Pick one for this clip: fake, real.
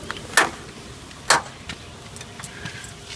real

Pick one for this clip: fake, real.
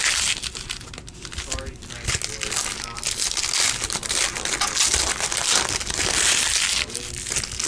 real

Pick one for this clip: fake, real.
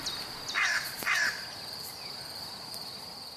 real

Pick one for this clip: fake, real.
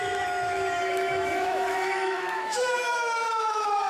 fake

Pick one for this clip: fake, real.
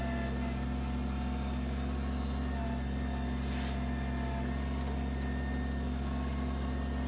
real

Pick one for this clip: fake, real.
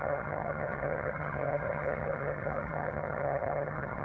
fake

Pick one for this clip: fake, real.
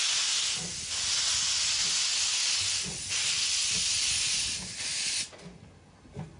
real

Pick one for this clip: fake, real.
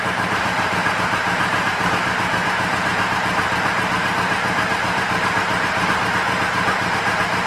fake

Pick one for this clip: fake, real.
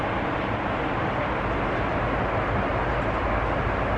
real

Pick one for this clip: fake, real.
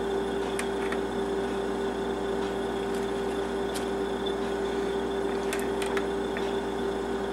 real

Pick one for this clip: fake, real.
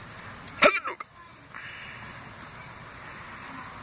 real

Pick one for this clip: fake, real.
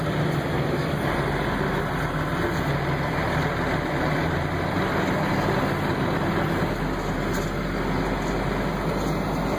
real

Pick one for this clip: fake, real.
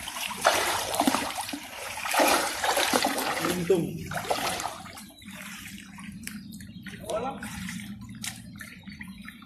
fake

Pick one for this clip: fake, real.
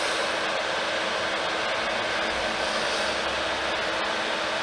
real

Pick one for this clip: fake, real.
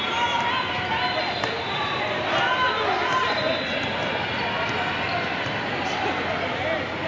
real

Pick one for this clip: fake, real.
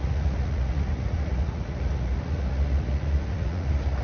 fake